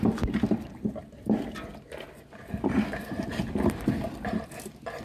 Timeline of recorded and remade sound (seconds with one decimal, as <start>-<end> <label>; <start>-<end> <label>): 0.0-5.0 recorded